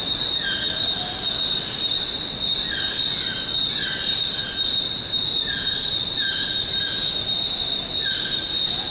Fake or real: real